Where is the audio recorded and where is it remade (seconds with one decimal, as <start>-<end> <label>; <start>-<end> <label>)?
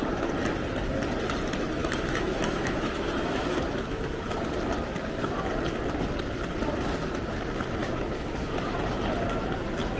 0.0-1.8 recorded; 1.8-4.3 remade; 4.3-7.8 recorded; 7.8-8.7 remade; 8.7-10.0 recorded